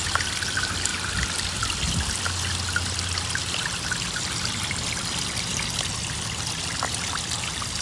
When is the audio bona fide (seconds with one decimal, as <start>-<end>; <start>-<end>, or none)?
0.0-7.8